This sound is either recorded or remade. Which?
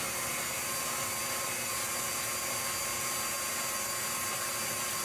recorded